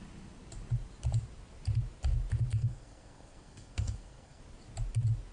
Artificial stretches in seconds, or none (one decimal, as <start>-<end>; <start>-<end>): 2.5-4.4